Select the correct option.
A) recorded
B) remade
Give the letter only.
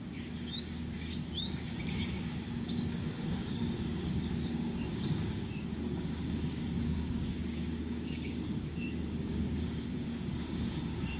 B